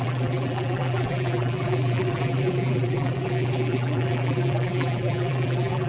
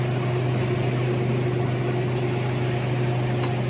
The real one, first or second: second